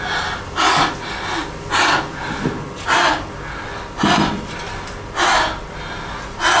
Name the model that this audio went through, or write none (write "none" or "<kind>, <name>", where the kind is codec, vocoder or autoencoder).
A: none